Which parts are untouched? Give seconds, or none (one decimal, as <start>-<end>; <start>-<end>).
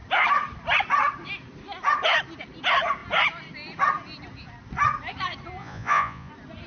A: 0.0-5.6; 6.3-6.7